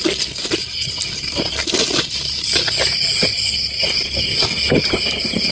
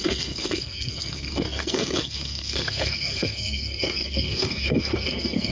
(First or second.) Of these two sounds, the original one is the first